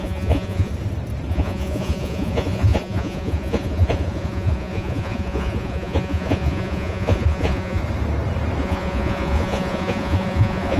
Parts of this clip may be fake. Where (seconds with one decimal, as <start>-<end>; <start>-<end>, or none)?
0.0-0.7; 1.3-7.8; 8.6-10.8